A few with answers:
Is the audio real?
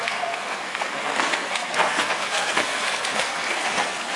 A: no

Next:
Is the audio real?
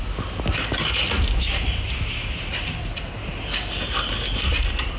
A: yes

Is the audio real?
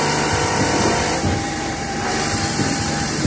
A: no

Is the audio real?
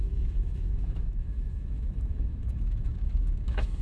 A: no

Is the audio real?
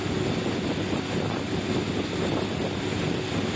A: yes